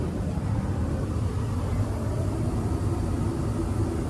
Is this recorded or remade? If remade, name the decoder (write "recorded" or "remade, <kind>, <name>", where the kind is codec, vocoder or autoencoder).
recorded